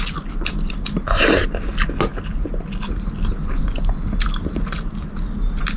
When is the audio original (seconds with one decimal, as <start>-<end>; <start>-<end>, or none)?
0.0-5.8